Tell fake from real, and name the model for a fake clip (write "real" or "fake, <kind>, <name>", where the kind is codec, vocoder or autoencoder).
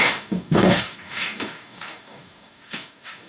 fake, codec, DAC